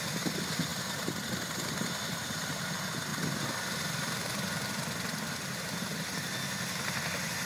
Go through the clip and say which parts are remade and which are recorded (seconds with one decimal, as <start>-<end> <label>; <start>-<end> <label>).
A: 0.0-7.5 recorded